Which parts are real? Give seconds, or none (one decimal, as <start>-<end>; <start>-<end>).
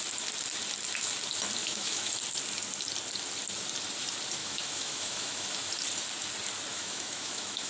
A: 0.0-1.6; 2.2-4.4; 5.7-6.7